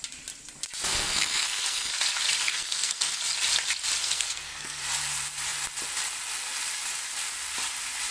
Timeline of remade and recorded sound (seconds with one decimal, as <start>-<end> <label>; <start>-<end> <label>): 0.0-0.9 recorded; 0.9-1.9 remade; 1.9-2.4 recorded; 2.4-3.2 remade; 3.2-4.0 recorded; 4.0-4.8 remade; 4.8-8.1 recorded